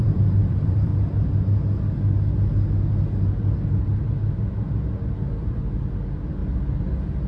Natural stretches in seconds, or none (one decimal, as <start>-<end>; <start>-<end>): 0.9-5.3; 6.4-7.3